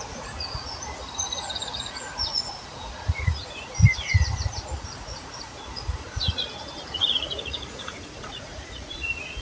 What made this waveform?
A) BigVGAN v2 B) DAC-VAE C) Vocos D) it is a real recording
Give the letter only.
C